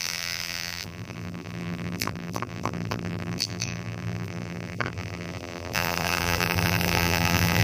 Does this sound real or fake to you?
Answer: fake